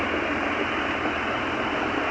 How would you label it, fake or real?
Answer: real